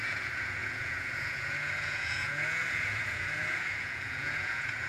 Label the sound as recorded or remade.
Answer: remade